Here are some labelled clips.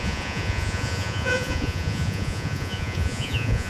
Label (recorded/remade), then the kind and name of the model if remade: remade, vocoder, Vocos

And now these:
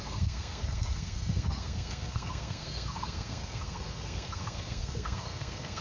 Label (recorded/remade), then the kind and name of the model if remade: remade, codec, SNAC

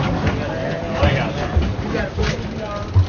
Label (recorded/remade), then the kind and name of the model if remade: recorded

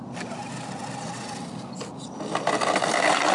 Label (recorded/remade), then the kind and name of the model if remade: recorded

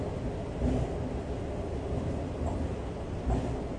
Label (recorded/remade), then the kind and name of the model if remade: recorded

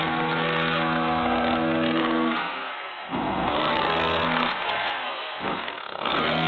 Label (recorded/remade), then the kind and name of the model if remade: remade, codec, SNAC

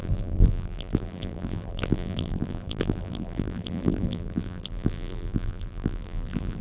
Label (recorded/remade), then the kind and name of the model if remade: remade, vocoder, BigVGAN v2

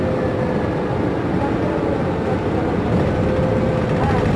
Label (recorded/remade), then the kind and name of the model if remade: recorded